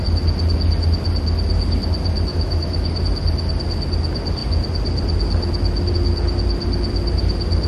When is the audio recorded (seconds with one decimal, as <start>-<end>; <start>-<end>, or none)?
0.0-2.3; 3.0-7.7